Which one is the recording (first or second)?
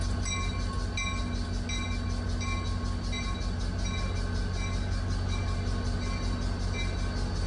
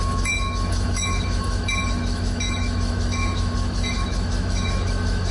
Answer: first